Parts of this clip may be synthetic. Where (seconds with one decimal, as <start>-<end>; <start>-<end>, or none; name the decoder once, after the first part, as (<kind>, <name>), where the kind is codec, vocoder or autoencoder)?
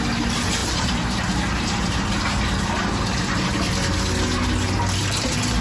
0.6-3.7 (vocoder, BigVGAN v2)